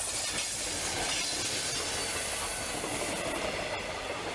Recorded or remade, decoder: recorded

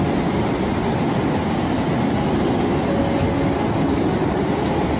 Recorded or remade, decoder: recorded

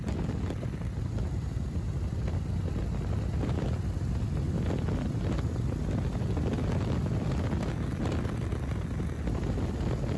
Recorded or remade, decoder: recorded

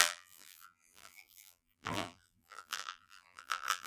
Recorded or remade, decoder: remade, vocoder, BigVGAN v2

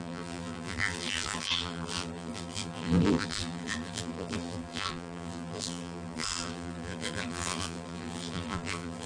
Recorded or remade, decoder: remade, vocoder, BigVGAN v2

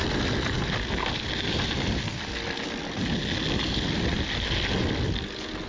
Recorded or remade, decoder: recorded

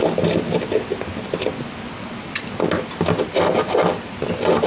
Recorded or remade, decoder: recorded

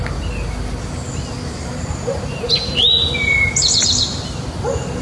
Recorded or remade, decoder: recorded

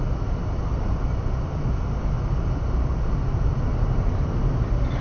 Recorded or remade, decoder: recorded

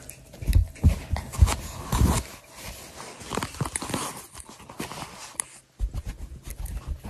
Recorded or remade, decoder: recorded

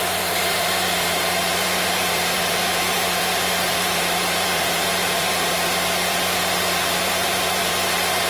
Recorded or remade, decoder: remade, vocoder, BigVGAN v2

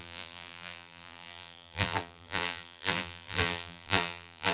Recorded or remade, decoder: remade, vocoder, BigVGAN v2